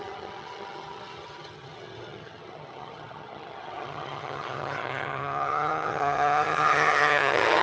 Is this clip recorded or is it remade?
remade